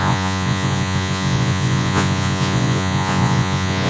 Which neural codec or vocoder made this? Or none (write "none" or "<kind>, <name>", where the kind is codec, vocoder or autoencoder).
vocoder, Vocos